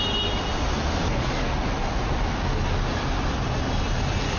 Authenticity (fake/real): real